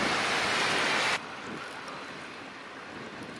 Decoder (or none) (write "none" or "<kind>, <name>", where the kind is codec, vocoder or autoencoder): none